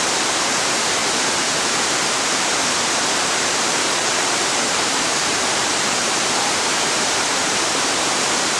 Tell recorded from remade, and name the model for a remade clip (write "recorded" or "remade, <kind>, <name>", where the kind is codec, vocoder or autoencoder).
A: remade, vocoder, BigVGAN v2